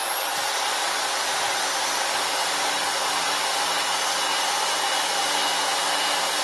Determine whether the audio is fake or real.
real